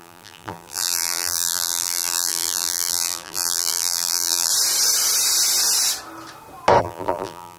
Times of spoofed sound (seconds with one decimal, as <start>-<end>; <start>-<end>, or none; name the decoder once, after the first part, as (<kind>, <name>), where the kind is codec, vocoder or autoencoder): 0.0-4.5 (vocoder, BigVGAN v2); 6.8-7.6